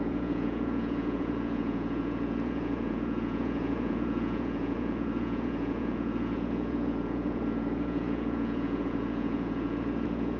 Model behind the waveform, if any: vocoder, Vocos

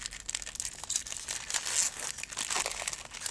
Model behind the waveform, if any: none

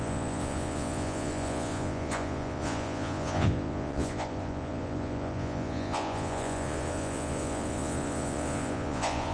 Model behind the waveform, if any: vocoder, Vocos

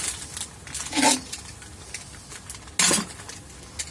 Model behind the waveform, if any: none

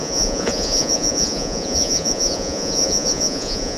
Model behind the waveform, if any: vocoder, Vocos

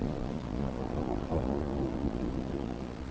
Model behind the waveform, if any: vocoder, Vocos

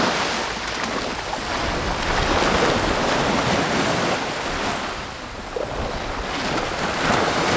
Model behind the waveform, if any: none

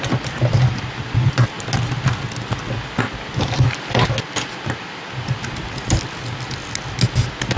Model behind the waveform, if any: none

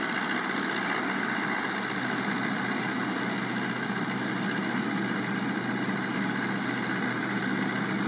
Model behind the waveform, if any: none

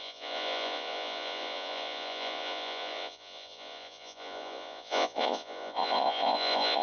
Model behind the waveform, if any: vocoder, Vocos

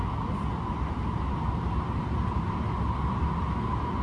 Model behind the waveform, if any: none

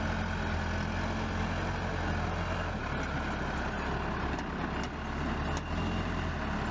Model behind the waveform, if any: none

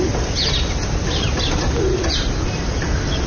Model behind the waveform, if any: none